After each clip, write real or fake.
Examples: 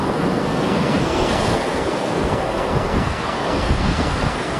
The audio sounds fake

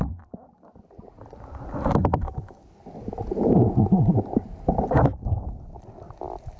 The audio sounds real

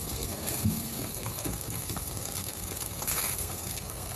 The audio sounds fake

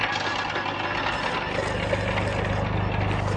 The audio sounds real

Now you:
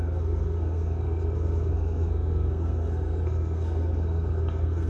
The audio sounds fake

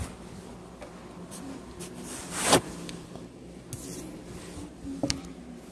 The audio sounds real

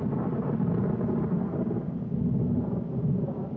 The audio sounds real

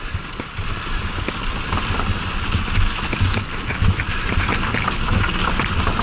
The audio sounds real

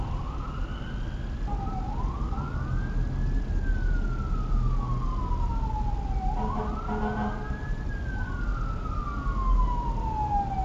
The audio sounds real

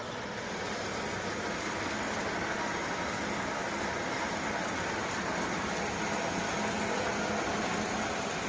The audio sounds real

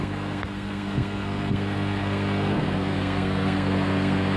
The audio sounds fake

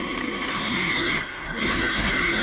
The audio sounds fake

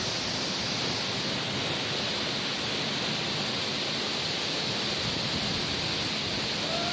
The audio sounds real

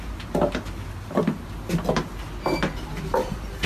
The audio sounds real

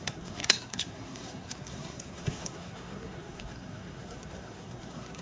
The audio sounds fake